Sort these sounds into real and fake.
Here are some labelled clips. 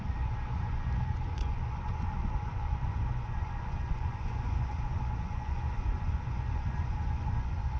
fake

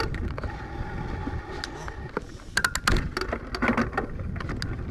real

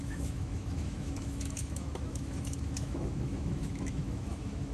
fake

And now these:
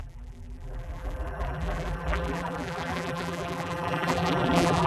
fake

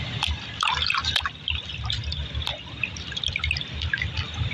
real